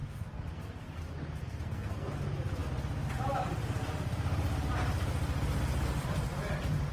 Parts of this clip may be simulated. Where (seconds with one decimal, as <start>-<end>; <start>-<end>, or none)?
0.0-1.0; 1.4-2.1